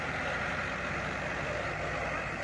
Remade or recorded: recorded